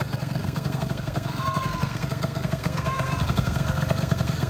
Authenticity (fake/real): fake